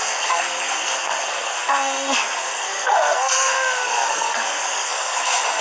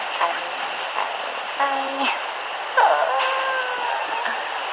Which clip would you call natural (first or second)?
second